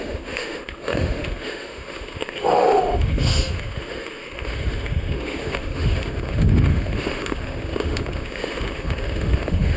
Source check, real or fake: fake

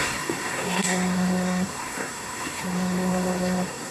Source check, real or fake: fake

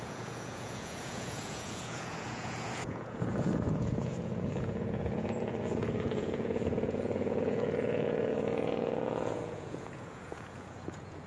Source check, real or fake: fake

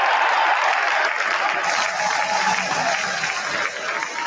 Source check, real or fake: real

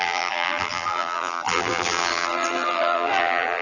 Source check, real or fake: fake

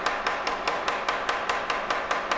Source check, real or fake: real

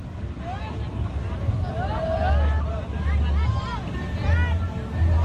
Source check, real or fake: real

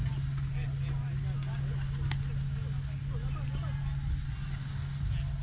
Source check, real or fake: real